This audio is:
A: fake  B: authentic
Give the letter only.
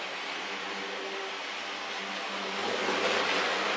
B